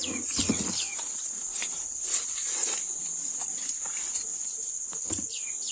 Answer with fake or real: fake